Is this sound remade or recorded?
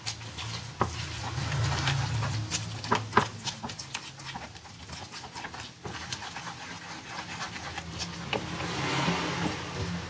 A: recorded